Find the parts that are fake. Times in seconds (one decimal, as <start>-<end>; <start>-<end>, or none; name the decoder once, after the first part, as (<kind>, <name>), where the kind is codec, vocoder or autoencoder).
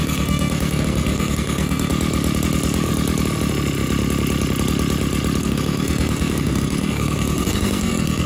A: 0.0-1.9 (codec, SNAC); 5.4-8.3